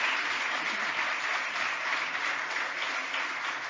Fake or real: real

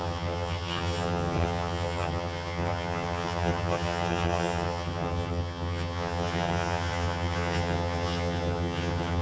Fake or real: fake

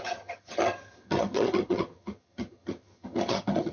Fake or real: fake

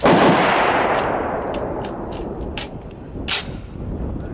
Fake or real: real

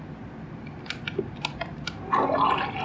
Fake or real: real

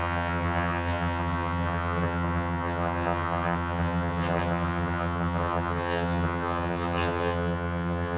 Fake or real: fake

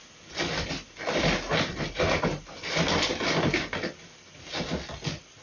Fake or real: real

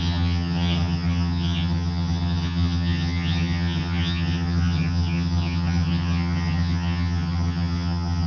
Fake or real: fake